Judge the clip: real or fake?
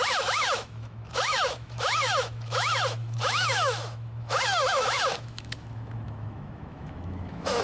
fake